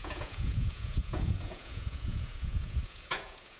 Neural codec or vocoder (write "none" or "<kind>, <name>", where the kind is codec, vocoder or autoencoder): vocoder, Vocos